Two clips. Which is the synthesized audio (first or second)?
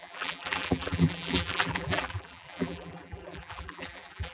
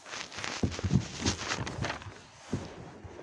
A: first